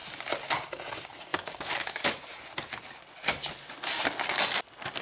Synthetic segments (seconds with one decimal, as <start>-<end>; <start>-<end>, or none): 1.3-2.2

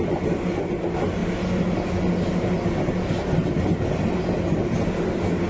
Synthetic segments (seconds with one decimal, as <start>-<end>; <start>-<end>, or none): none